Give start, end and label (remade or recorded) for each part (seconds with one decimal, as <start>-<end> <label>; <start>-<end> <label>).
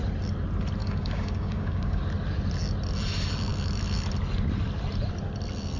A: 0.0-0.8 recorded; 0.8-2.0 remade; 2.0-5.8 recorded